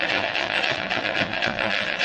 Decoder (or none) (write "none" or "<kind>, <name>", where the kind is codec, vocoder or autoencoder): vocoder, WaveNeXt